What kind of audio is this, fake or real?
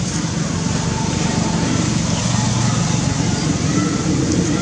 real